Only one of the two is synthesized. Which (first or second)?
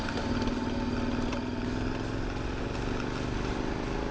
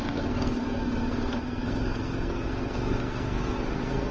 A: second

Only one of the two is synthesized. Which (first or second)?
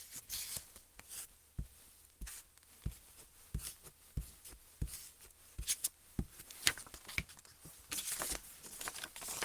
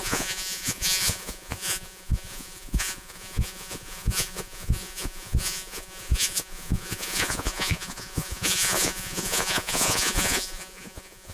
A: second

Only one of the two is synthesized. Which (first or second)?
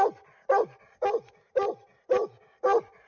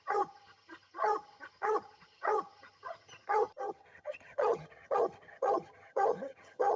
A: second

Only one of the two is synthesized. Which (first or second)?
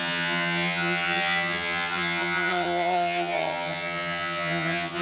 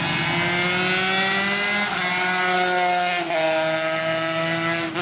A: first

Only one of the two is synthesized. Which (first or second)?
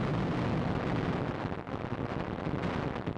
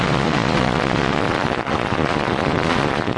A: second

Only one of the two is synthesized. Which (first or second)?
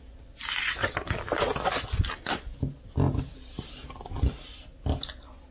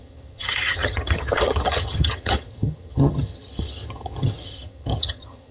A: second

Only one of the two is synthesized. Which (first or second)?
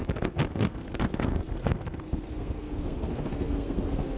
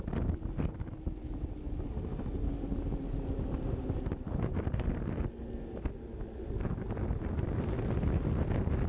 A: first